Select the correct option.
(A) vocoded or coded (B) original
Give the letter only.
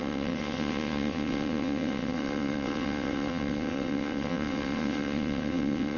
A